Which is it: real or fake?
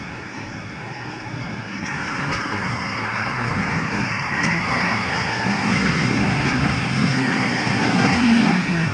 fake